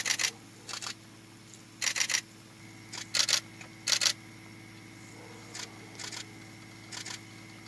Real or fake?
real